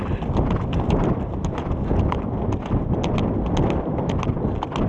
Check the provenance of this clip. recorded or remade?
recorded